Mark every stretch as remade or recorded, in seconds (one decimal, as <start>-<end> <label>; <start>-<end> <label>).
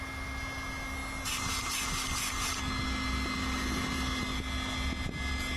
0.0-5.6 recorded